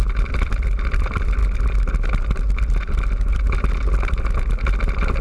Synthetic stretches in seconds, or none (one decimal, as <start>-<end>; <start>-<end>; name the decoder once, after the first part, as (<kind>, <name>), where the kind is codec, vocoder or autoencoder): 0.0-1.4 (vocoder, BigVGAN v2); 4.5-5.2